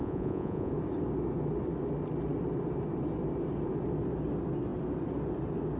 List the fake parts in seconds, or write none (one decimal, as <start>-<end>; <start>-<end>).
0.0-0.7